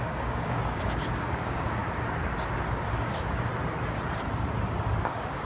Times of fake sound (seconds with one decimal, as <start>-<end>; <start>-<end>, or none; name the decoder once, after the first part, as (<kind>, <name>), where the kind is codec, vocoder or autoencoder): 0.0-1.8 (codec, DAC); 2.9-3.5; 5.0-5.4